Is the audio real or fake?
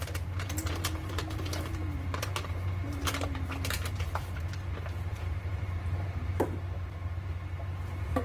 fake